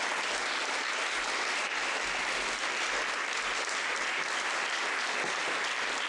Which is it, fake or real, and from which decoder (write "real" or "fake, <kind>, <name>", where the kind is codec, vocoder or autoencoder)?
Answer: fake, vocoder, BigVGAN v2